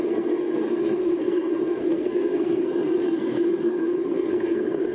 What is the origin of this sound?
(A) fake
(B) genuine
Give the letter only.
A